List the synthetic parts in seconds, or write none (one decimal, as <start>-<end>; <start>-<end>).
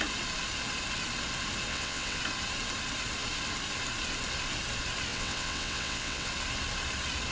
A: 1.7-2.2; 5.1-6.3